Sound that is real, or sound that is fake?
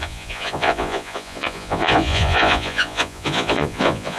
fake